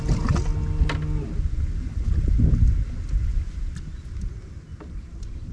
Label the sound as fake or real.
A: real